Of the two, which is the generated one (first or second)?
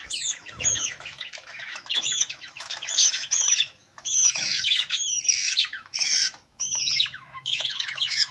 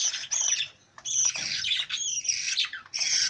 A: first